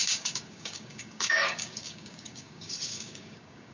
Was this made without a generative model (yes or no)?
no